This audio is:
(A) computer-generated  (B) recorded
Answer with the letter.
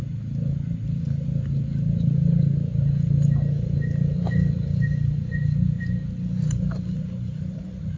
B